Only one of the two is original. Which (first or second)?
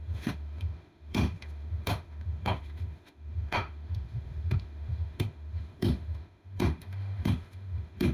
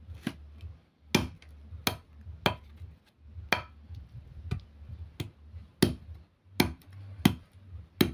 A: second